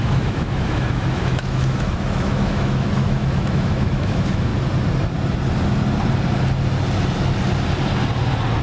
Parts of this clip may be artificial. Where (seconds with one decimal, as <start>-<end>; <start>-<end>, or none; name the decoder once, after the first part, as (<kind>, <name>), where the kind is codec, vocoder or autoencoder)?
0.0-4.5 (autoencoder, DAC-VAE)